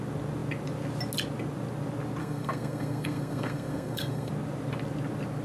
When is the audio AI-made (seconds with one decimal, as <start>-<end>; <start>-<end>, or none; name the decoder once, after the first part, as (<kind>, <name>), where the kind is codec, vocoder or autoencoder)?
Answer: 2.2-4.3 (codec, SNAC)